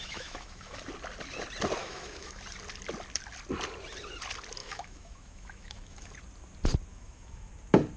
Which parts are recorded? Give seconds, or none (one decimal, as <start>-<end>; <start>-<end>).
0.8-1.8; 2.4-4.6; 6.1-6.9; 7.5-8.0